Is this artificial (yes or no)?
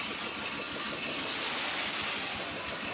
no